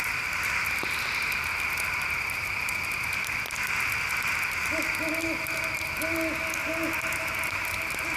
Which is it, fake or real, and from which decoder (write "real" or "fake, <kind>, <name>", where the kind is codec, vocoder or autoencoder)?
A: real